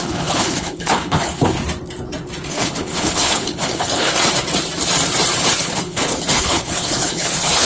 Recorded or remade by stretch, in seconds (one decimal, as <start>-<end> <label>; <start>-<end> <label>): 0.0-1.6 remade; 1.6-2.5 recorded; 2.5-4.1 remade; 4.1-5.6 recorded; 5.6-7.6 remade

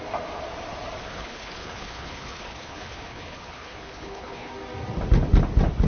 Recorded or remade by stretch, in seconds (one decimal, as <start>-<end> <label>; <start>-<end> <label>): 0.0-1.0 recorded; 1.0-4.5 remade; 4.5-5.9 recorded

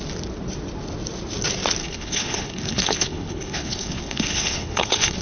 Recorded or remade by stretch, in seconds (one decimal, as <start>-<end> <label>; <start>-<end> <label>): 0.0-1.8 recorded; 1.8-5.2 remade

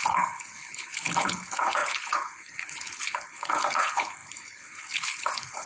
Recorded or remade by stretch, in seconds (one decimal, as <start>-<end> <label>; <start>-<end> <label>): 0.0-5.7 remade

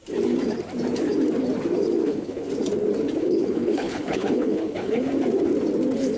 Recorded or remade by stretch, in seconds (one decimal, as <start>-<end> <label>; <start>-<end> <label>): 0.0-2.0 recorded; 2.0-2.5 remade; 2.5-3.2 recorded; 3.2-5.1 remade; 5.1-6.2 recorded